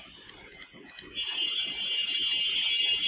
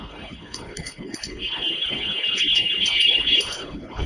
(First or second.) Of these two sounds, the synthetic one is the second